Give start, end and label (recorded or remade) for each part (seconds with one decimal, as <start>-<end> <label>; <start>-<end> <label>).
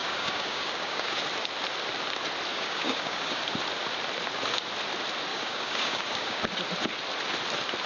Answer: 0.0-1.2 remade; 1.2-2.5 recorded; 2.5-3.4 remade; 3.4-5.3 recorded; 5.3-6.4 remade; 6.4-7.9 recorded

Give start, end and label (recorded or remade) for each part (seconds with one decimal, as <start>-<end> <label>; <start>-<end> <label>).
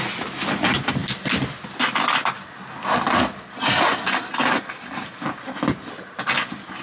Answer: 0.0-6.8 recorded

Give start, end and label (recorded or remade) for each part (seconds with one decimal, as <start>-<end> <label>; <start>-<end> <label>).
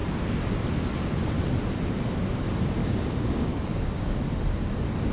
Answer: 0.0-2.8 recorded; 2.8-4.2 remade; 4.2-5.1 recorded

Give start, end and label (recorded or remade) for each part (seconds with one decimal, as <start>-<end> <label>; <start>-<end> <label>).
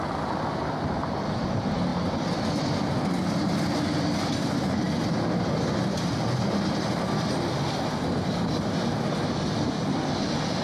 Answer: 0.0-10.6 recorded